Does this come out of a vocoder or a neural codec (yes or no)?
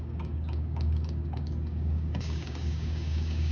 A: yes